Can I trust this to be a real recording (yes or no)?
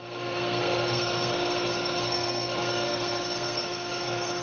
no